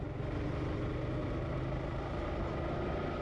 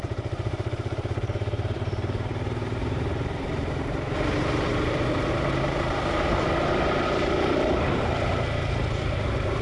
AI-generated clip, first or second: second